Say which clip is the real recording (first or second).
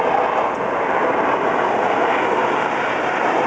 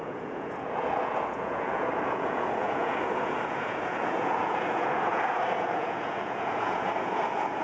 first